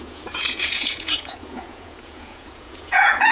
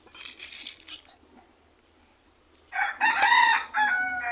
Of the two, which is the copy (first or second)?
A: first